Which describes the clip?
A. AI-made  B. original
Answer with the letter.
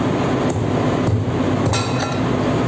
B